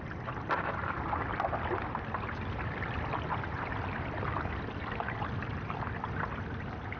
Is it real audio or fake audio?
real